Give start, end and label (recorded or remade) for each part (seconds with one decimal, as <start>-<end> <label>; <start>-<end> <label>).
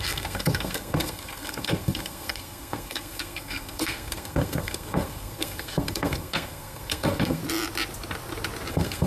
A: 0.0-7.4 remade; 7.4-8.7 recorded; 8.7-9.1 remade